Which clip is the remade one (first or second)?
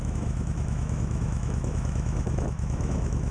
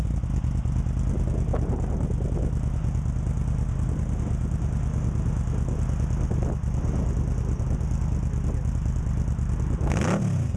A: first